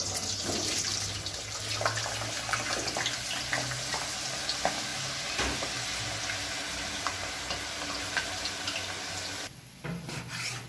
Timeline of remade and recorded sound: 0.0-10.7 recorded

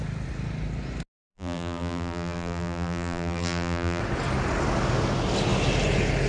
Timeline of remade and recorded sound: 0.0-1.3 recorded; 1.3-4.0 remade; 4.0-6.3 recorded

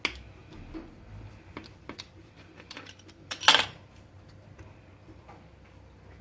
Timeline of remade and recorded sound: 0.0-0.4 recorded; 0.4-4.1 remade; 4.1-6.2 recorded

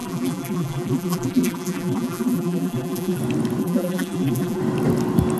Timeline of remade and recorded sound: 0.0-3.2 remade; 3.2-3.6 recorded; 3.6-4.6 remade; 4.6-5.4 recorded

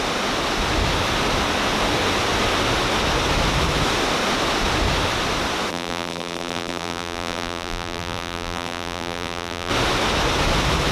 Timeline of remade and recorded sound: 0.0-5.7 recorded; 5.7-9.7 remade; 9.7-10.9 recorded